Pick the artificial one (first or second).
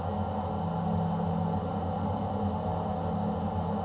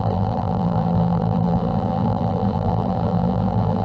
second